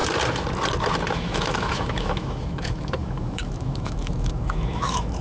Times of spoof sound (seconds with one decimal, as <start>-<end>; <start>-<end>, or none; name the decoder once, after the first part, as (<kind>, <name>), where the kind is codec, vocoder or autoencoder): 1.1-5.2 (autoencoder, DAC-VAE)

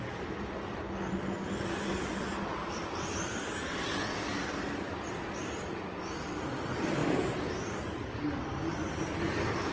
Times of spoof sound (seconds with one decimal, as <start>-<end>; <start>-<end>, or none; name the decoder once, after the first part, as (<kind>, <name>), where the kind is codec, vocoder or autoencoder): none

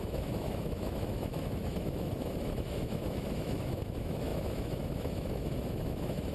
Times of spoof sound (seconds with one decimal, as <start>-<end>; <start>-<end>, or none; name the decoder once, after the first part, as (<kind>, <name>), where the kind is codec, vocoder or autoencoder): 0.0-6.3 (autoencoder, DAC-VAE)

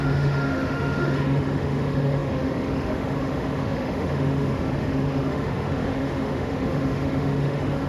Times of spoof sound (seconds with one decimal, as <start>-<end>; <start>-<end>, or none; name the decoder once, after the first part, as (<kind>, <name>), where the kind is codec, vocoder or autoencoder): 0.0-7.9 (autoencoder, DAC-VAE)

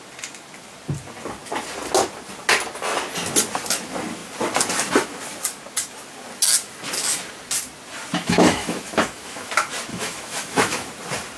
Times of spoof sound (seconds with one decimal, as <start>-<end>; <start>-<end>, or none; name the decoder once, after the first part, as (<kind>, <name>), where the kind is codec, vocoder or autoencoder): 8.1-9.5 (autoencoder, DAC-VAE); 9.9-10.9

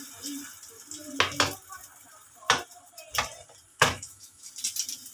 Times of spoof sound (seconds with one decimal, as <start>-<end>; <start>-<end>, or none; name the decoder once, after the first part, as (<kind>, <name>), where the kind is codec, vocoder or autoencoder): 3.7-4.5 (autoencoder, DAC-VAE)